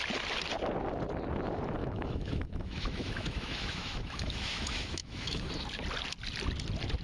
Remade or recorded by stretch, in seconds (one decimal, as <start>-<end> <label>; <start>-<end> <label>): 0.0-1.8 recorded; 1.8-5.5 remade; 5.5-7.0 recorded